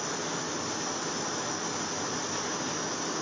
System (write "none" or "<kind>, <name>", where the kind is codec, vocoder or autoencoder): none